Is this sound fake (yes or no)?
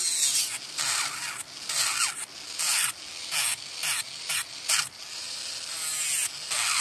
no